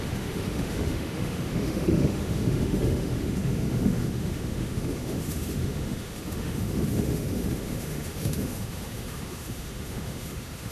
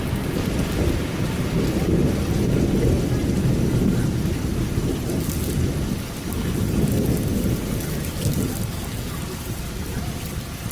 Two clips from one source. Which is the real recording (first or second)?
second